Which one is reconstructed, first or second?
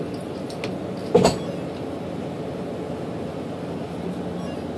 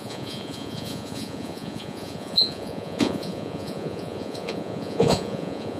second